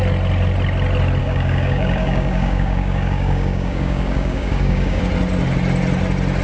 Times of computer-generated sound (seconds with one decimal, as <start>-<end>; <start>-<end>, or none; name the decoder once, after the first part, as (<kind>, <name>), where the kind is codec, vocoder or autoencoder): 1.2-5.0 (codec, DAC)